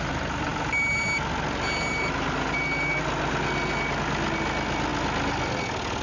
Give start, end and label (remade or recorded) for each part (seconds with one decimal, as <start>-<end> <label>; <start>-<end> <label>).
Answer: 0.0-6.0 recorded